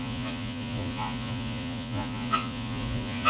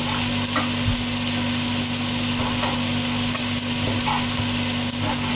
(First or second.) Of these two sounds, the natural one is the second